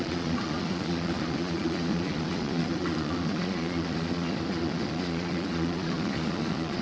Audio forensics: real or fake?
fake